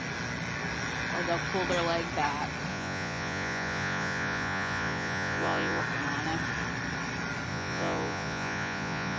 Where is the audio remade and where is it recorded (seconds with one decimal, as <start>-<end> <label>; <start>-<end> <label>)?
0.0-2.7 recorded; 2.7-5.8 remade; 5.8-7.5 recorded; 7.5-9.2 remade